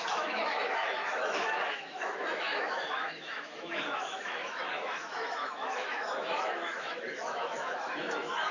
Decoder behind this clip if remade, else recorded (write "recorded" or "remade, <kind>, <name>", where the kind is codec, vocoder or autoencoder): remade, autoencoder, DAC-VAE